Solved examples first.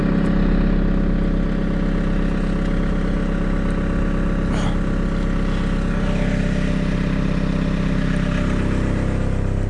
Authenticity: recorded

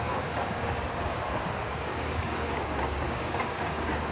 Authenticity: remade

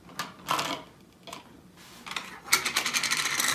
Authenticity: recorded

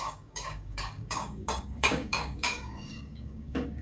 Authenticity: remade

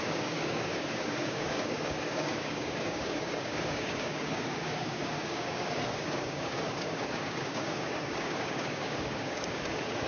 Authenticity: remade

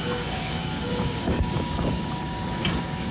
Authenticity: remade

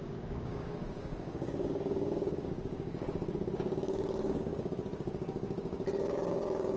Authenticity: remade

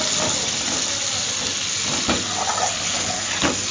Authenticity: recorded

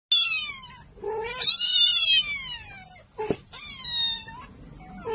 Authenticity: recorded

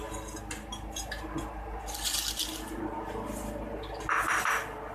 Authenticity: recorded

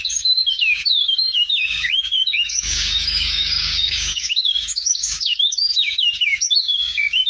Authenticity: remade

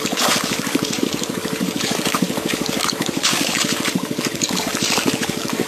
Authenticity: remade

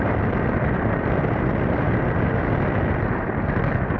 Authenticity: recorded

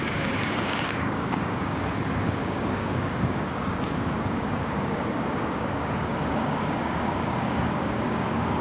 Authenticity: remade